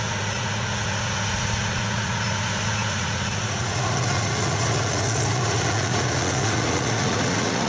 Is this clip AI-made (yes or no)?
yes